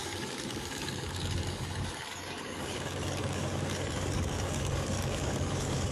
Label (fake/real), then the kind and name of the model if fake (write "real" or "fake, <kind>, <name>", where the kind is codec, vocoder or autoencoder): fake, codec, DAC